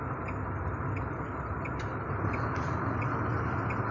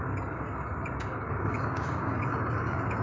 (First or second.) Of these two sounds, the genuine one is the first